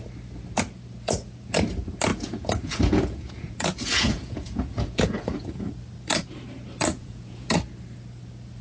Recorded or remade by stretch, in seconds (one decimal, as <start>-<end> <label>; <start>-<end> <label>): 0.0-2.1 recorded; 2.1-5.7 remade; 5.7-6.9 recorded; 6.9-7.5 remade; 7.5-8.6 recorded